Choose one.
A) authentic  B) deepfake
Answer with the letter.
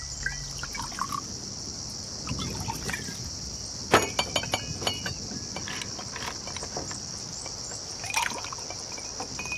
A